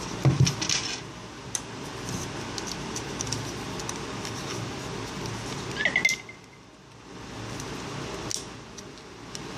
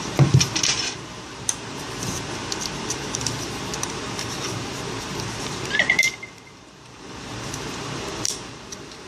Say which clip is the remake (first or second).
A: second